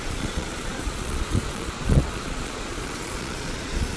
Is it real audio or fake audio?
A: fake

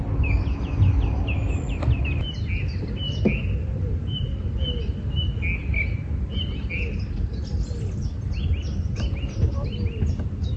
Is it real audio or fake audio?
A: real